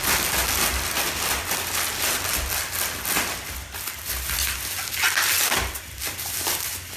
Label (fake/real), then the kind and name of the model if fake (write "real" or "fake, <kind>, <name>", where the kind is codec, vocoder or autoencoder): real